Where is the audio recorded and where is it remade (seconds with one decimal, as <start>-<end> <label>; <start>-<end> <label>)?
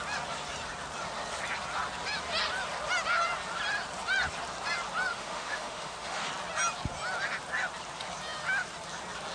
0.0-5.1 recorded; 5.1-6.3 remade; 6.3-9.3 recorded